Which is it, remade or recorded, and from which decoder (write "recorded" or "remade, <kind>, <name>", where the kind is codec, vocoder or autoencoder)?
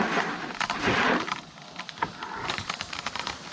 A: recorded